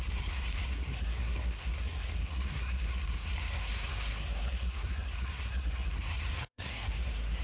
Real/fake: fake